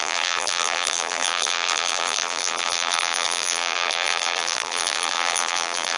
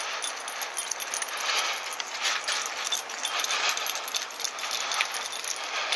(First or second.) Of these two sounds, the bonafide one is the second